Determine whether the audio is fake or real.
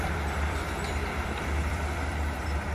fake